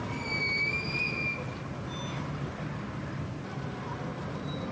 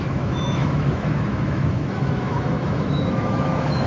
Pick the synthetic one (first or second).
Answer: second